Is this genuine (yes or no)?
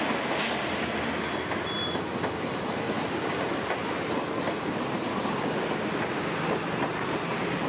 yes